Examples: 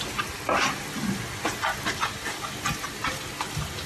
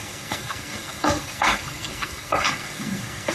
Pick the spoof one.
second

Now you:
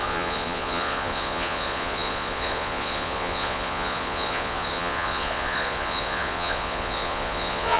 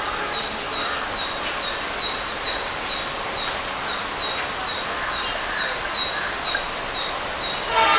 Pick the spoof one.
first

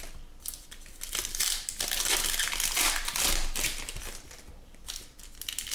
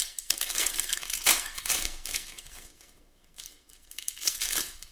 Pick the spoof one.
second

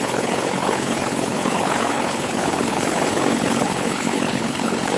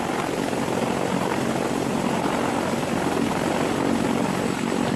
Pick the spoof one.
first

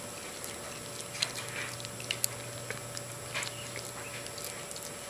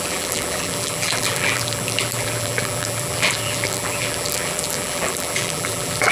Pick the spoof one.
second